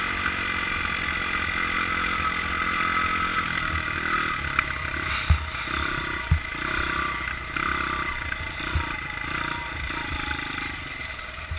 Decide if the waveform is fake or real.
real